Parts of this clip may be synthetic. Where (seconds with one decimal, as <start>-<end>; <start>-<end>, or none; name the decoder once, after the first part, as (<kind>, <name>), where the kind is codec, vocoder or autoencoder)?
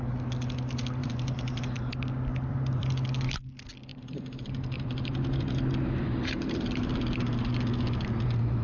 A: 1.0-1.9 (vocoder, BigVGAN v2); 2.3-2.9; 3.9-7.5